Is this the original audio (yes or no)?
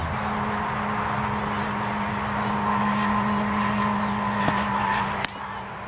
yes